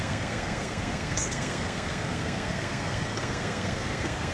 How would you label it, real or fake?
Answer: fake